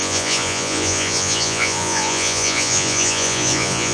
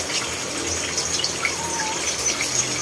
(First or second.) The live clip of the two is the second